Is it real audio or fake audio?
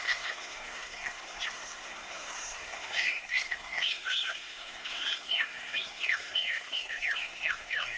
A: fake